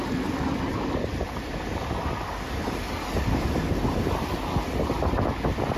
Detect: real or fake real